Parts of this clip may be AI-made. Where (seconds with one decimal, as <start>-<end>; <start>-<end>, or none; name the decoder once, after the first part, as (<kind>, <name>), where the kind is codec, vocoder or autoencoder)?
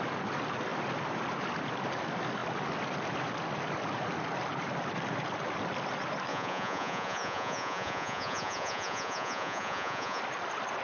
6.3-10.2 (vocoder, Vocos)